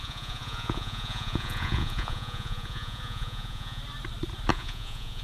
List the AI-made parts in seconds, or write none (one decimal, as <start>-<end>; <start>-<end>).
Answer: 0.0-3.8; 4.5-5.2